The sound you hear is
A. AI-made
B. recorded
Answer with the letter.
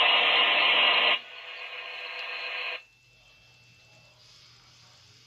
B